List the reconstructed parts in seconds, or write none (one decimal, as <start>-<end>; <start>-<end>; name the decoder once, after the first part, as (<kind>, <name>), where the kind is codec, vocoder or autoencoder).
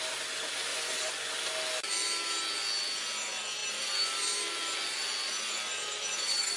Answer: 0.7-1.3 (vocoder, Vocos)